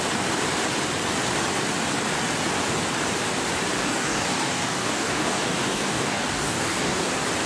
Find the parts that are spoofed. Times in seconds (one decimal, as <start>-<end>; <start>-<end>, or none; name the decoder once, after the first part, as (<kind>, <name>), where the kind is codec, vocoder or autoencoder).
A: 3.8-7.1 (codec, DAC)